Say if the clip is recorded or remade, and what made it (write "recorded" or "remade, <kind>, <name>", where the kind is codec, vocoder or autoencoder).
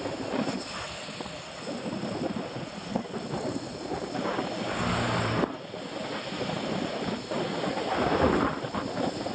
recorded